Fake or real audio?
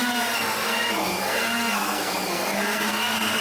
fake